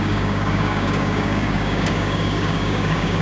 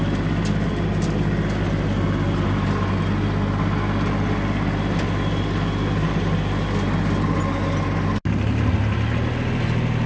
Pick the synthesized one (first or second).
first